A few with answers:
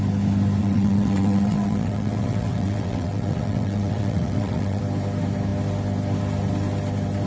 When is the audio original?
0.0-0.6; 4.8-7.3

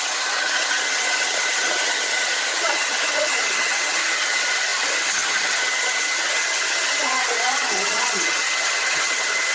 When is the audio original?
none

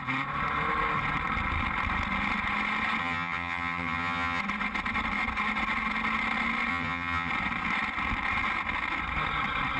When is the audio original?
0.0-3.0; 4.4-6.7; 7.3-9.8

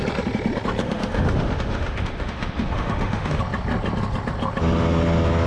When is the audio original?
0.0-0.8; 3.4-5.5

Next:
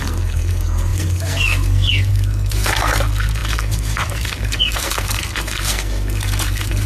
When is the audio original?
none